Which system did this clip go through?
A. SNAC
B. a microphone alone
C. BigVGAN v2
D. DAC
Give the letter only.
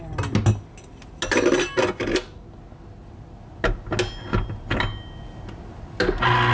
B